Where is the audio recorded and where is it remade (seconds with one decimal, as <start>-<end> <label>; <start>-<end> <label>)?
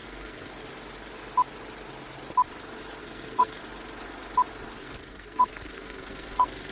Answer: 0.0-0.5 remade; 0.5-3.0 recorded; 3.0-3.6 remade; 3.6-4.8 recorded; 4.8-6.7 remade